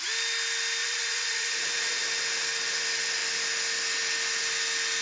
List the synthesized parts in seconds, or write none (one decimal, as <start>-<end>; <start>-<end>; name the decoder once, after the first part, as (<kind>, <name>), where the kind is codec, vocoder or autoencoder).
0.8-2.0 (vocoder, Vocos)